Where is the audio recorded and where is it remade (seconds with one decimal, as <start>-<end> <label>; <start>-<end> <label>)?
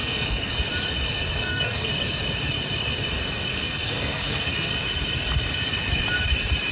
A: 0.0-0.6 remade; 0.6-1.3 recorded; 1.3-1.9 remade; 1.9-3.5 recorded; 3.5-4.7 remade; 4.7-6.7 recorded